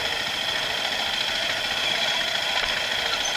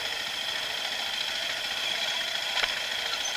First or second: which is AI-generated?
second